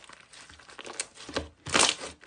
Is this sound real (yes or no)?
yes